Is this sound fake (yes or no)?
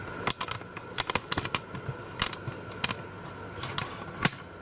no